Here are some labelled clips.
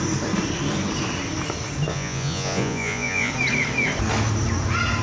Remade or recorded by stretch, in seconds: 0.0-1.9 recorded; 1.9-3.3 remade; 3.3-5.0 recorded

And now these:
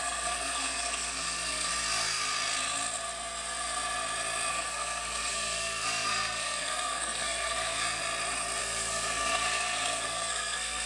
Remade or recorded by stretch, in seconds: 0.0-1.7 remade; 1.7-4.5 recorded; 4.5-8.0 remade; 8.0-8.6 recorded; 8.6-10.9 remade

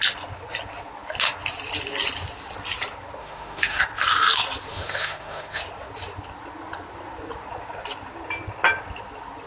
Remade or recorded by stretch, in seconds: 0.0-3.2 recorded; 3.2-3.8 remade; 3.8-4.7 recorded; 4.7-5.6 remade; 5.6-9.5 recorded

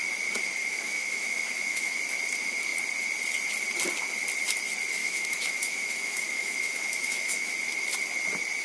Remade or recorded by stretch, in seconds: 0.0-0.6 recorded; 0.6-2.0 remade; 2.0-5.0 recorded; 5.0-7.5 remade; 7.5-8.6 recorded

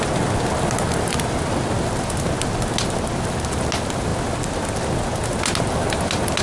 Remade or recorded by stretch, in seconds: 0.0-6.4 recorded

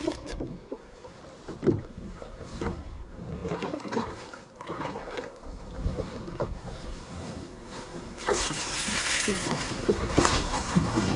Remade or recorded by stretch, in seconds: 0.0-1.2 remade; 1.2-1.8 recorded; 1.8-11.2 remade

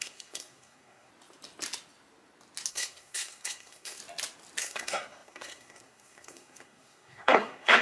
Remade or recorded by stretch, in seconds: 0.0-1.1 remade; 1.1-2.7 recorded; 2.7-4.0 remade; 4.0-4.6 recorded; 4.6-7.8 remade